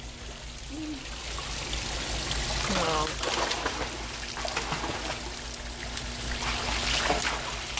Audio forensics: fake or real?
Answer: real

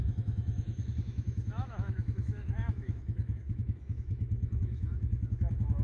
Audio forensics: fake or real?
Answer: fake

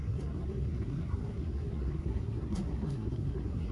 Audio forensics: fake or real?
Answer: fake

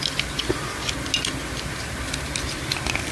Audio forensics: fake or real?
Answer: real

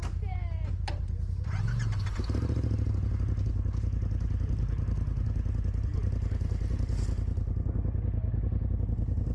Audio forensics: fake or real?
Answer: real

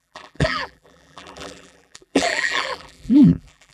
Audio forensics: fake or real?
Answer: fake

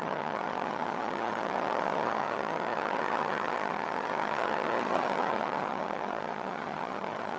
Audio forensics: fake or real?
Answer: fake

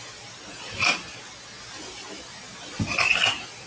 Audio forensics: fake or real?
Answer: real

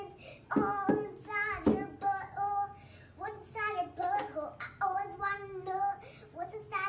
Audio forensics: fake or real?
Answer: real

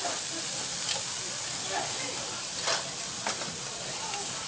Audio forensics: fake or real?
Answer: real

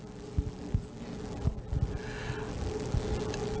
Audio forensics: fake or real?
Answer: real